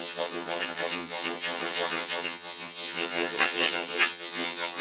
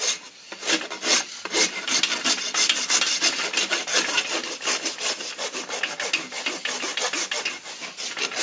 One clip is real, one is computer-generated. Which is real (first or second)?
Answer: second